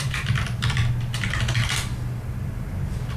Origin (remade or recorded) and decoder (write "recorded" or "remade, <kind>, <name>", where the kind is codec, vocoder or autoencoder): recorded